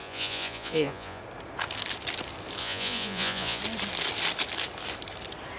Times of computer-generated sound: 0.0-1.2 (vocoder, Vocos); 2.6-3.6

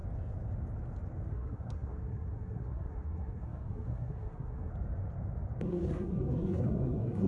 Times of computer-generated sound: 1.3-4.7 (codec, SNAC); 5.6-7.3

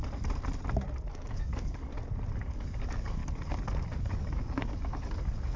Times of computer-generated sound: 1.1-1.9 (codec, DAC); 2.4-3.2; 4.0-5.6

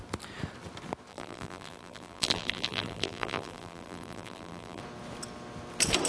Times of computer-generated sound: 1.1-4.8 (vocoder, BigVGAN v2)

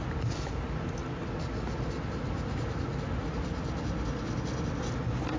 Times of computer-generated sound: none

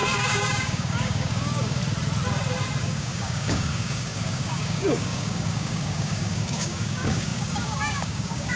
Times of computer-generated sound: 0.0-1.8 (codec, DAC); 2.8-8.6

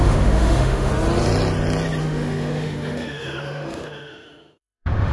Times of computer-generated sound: 0.0-0.9 (autoencoder, DAC-VAE); 2.0-5.1

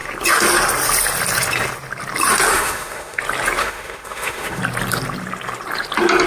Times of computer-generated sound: 2.5-3.2 (autoencoder, DAC-VAE); 3.6-4.6